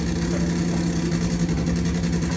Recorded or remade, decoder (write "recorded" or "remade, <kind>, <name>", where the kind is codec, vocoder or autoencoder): recorded